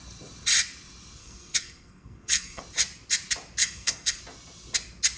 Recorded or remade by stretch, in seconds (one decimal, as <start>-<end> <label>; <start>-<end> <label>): 0.0-1.2 recorded; 1.2-2.6 remade; 2.6-3.6 recorded; 3.6-4.2 remade; 4.2-5.2 recorded